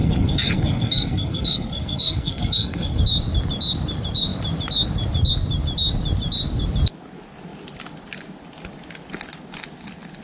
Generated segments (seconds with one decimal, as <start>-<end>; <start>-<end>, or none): 0.0-3.0